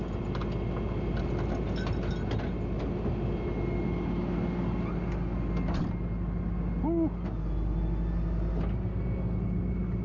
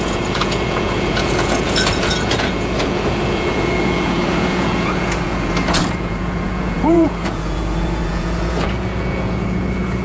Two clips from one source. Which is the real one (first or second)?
first